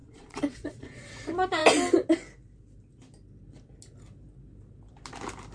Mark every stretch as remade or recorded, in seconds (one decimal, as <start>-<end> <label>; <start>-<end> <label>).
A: 0.0-1.0 remade; 1.0-5.5 recorded